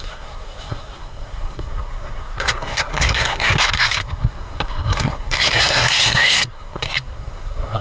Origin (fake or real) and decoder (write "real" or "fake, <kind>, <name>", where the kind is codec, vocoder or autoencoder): fake, codec, SNAC